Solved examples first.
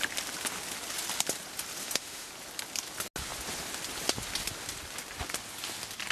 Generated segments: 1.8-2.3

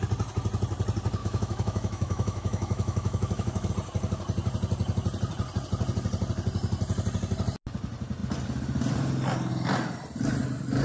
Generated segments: 1.2-3.7

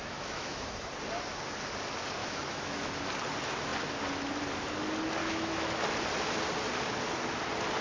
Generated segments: 0.0-0.9; 2.2-2.9; 5.2-5.7

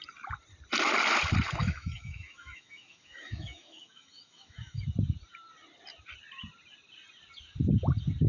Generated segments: 1.6-4.8

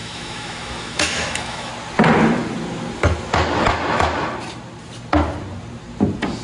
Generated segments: 0.0-1.7

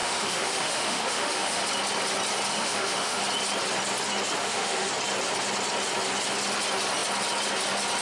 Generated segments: 0.0-1.6; 2.5-3.2; 4.4-4.9

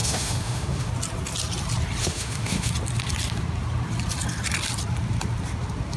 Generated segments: 0.0-0.9; 2.0-2.7

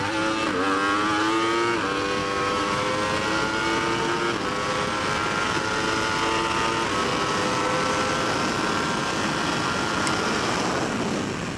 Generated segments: 2.2-2.9